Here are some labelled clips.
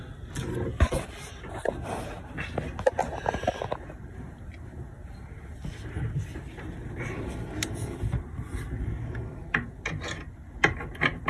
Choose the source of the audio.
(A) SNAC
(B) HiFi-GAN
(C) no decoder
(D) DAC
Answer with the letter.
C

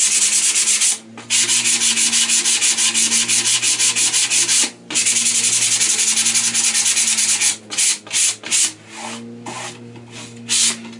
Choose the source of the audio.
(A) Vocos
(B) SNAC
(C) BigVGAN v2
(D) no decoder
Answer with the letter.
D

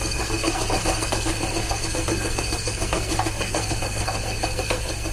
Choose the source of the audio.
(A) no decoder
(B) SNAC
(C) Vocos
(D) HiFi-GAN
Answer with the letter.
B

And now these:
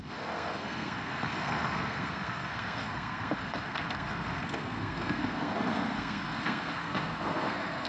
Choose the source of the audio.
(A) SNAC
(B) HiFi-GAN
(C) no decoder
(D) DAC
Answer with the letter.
A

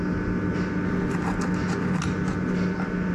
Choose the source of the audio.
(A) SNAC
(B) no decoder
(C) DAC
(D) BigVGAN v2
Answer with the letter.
B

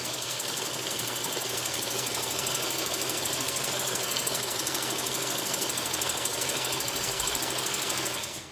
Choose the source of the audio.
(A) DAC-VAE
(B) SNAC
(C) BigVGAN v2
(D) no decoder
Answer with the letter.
B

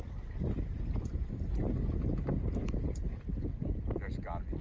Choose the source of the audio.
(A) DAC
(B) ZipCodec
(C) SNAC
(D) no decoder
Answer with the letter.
D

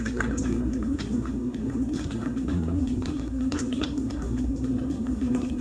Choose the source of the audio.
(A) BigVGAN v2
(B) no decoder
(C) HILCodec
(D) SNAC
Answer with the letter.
D